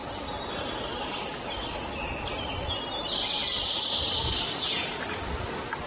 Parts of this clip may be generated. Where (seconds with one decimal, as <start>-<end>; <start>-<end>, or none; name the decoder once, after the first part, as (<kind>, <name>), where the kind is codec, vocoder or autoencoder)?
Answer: none